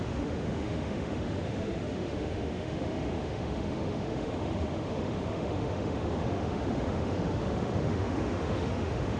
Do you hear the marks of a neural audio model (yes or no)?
yes